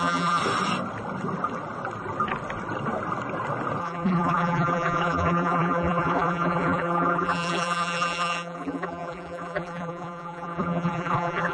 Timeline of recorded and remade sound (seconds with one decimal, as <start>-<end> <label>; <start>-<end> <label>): 0.0-0.4 remade; 0.4-3.8 recorded; 3.8-11.5 remade